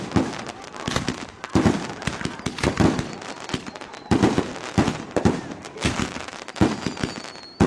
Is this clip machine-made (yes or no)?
no